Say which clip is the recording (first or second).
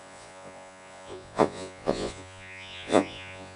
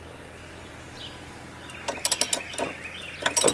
second